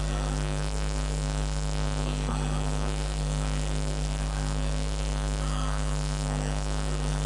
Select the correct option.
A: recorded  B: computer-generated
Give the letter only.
B